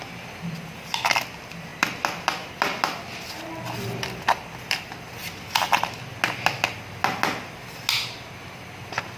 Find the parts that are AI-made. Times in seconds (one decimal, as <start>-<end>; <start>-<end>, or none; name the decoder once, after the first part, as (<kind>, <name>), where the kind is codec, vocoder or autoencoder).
none